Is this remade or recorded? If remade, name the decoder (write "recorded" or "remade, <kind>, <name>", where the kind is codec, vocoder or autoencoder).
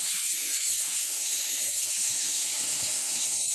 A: remade, codec, SNAC